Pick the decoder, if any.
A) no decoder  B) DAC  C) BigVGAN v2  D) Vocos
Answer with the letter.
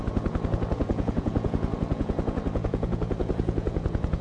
D